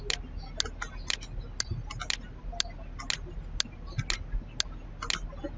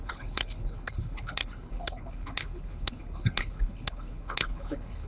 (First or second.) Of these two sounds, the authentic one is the first